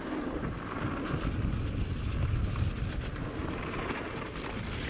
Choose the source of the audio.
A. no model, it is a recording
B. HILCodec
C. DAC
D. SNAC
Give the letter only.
A